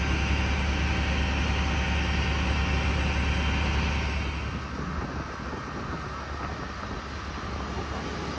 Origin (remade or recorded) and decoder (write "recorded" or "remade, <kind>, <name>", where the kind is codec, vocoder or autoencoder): recorded